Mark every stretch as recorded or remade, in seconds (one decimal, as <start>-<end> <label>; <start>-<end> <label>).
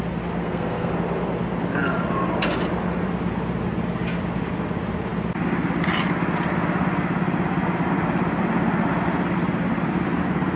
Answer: 0.0-0.4 recorded; 0.4-0.9 remade; 0.9-10.6 recorded